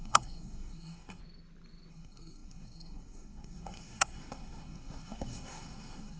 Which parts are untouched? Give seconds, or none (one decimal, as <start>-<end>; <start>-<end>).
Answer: 1.2-1.9